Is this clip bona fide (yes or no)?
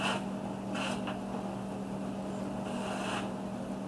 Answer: yes